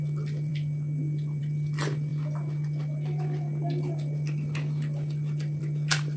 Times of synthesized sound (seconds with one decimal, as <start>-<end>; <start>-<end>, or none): none